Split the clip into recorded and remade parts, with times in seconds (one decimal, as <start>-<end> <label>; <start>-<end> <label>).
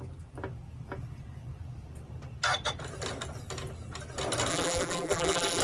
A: 0.0-4.5 recorded; 4.5-5.6 remade